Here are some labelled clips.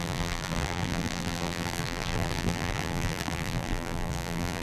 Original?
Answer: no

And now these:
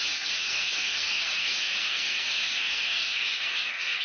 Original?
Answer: no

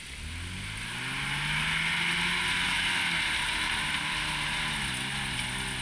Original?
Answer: yes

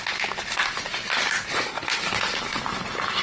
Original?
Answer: yes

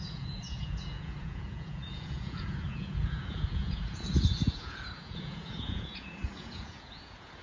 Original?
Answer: no